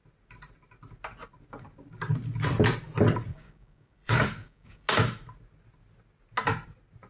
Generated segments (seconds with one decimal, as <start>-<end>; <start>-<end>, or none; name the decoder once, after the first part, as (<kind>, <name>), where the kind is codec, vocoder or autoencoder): 3.3-4.9 (codec, DAC)